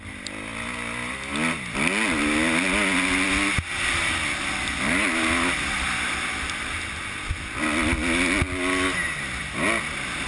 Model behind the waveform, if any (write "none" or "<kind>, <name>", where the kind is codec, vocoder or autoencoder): none